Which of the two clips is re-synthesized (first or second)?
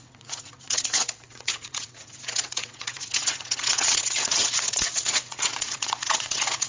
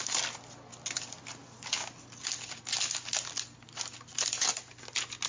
first